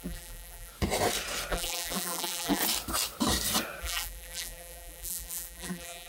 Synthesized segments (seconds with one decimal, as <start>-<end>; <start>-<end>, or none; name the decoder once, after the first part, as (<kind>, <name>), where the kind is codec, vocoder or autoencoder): 0.0-0.7 (vocoder, BigVGAN v2); 1.5-2.6; 3.8-6.1